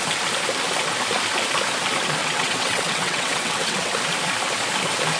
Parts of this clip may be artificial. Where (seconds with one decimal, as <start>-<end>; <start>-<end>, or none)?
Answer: 2.2-3.9